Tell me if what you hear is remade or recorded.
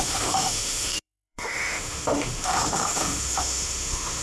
remade